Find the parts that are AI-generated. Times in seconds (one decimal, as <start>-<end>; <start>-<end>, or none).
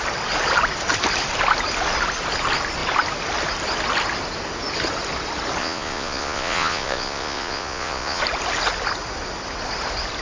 5.6-8.2